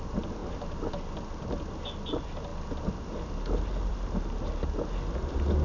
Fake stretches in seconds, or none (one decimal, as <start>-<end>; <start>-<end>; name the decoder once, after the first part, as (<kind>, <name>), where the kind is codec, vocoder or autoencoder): none